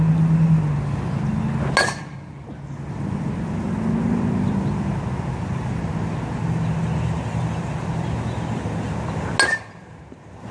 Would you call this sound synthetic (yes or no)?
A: no